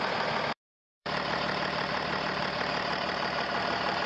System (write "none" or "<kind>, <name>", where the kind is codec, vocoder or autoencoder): vocoder, BigVGAN v2